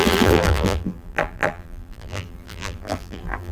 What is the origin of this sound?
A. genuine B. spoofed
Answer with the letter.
B